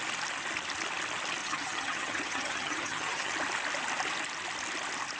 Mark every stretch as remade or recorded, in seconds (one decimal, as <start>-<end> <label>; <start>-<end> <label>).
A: 0.0-1.4 recorded; 1.4-3.3 remade; 3.3-5.2 recorded